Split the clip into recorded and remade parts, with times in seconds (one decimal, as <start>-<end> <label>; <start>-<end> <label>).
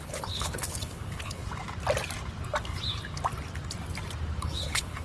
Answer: 0.0-1.4 remade; 1.4-4.4 recorded; 4.4-5.0 remade